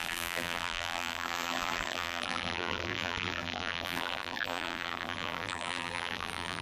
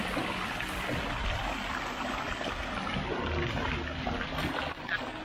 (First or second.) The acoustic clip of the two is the second